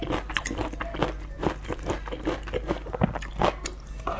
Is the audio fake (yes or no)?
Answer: no